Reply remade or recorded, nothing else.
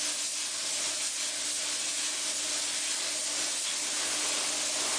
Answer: recorded